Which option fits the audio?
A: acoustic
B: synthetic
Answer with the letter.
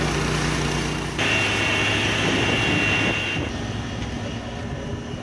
A